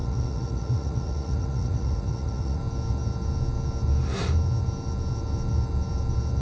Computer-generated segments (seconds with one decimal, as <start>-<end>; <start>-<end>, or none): 0.0-2.6